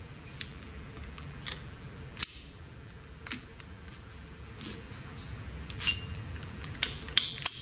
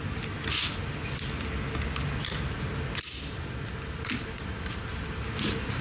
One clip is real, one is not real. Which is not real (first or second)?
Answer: first